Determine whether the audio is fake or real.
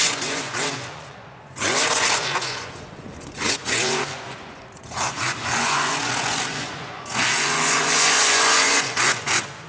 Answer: fake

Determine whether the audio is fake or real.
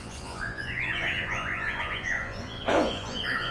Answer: fake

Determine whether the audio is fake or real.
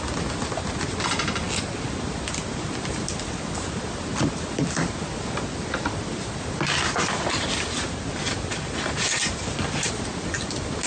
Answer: real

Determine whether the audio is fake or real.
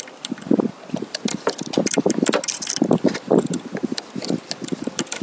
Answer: real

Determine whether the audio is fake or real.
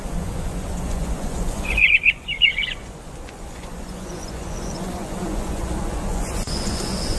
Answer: fake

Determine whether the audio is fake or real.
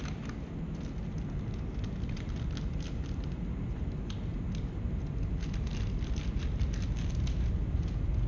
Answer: real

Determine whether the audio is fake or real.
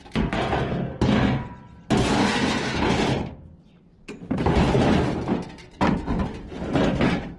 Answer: real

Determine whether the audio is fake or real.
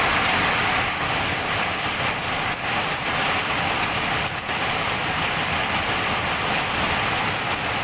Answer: real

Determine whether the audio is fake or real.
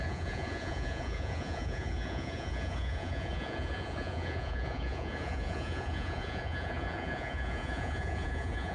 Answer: fake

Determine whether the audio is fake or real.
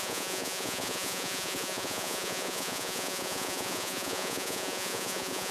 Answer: fake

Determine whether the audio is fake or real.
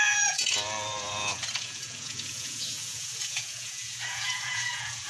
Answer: fake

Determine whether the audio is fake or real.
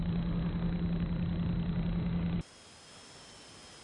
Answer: real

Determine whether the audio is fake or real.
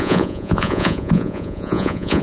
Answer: fake